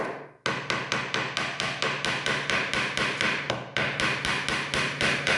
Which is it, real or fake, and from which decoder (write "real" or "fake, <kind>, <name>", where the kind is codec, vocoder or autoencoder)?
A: real